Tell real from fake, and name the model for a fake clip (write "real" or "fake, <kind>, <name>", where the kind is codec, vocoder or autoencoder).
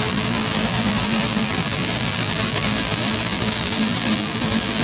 fake, vocoder, BigVGAN v2